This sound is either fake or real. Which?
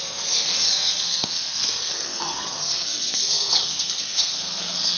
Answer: fake